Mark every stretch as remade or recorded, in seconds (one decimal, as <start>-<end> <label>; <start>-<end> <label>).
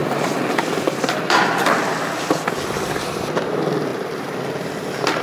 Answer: 0.0-1.6 remade; 1.6-3.9 recorded; 3.9-5.2 remade